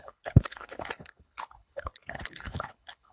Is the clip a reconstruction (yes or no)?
yes